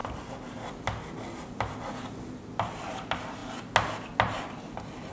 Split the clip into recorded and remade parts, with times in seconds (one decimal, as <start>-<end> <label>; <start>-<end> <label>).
0.0-5.1 recorded